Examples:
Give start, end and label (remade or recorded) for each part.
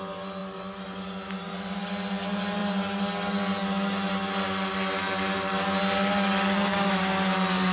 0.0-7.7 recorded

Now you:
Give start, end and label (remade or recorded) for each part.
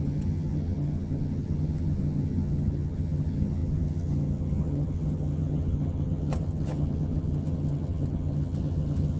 0.0-9.2 remade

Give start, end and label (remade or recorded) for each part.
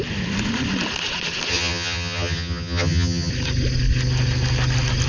0.0-1.5 recorded; 1.5-3.3 remade; 3.3-5.1 recorded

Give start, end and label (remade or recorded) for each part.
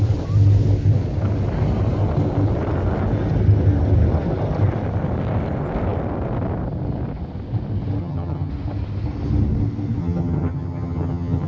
0.0-8.0 recorded; 8.0-8.5 remade; 8.5-10.0 recorded; 10.0-11.5 remade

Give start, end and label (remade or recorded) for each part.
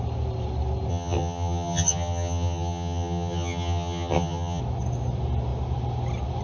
0.0-0.9 recorded; 0.9-4.6 remade; 4.6-6.4 recorded